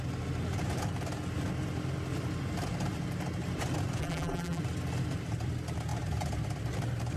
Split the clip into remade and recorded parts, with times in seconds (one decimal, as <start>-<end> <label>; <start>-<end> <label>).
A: 0.0-4.0 recorded; 4.0-4.6 remade; 4.6-7.2 recorded

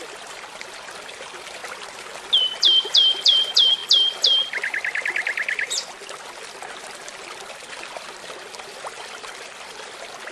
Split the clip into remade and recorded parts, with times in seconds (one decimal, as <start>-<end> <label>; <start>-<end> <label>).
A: 0.0-1.6 remade; 1.6-2.4 recorded; 2.4-3.8 remade; 3.8-7.7 recorded; 7.7-10.3 remade

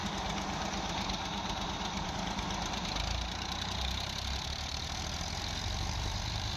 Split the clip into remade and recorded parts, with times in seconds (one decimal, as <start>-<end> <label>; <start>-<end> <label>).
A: 0.0-6.6 remade

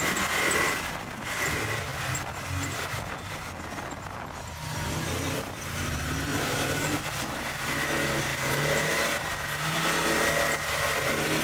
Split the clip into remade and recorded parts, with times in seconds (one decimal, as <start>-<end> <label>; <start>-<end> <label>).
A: 0.0-6.3 recorded; 6.3-7.1 remade; 7.1-8.3 recorded; 8.3-8.8 remade; 8.8-11.4 recorded

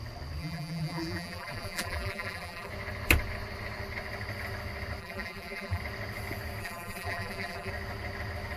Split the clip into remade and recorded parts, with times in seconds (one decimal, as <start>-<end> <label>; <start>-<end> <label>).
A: 0.0-0.4 recorded; 0.4-2.7 remade; 2.7-5.0 recorded; 5.0-5.8 remade; 5.8-6.6 recorded; 6.6-7.7 remade; 7.7-8.6 recorded

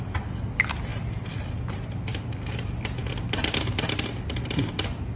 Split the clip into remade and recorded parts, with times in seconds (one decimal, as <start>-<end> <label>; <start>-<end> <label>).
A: 0.0-0.9 recorded; 0.9-1.5 remade; 1.5-5.2 recorded